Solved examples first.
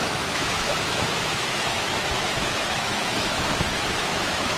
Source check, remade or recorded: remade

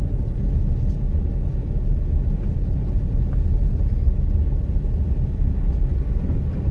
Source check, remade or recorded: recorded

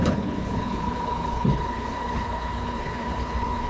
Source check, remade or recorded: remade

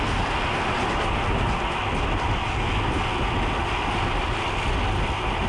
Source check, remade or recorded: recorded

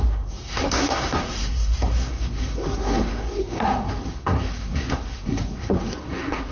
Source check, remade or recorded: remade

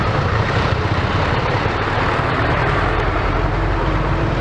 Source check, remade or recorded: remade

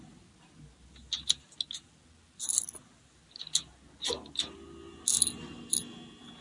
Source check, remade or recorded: recorded